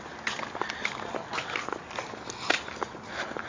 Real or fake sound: real